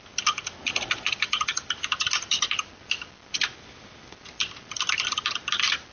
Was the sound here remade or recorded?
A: recorded